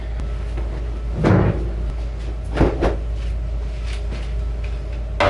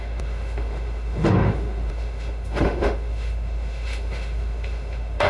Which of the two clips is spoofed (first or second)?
second